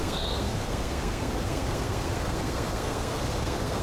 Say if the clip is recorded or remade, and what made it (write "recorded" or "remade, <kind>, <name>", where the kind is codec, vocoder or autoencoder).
remade, codec, SNAC